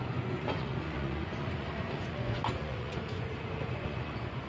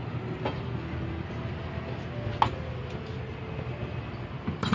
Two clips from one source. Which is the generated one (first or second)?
first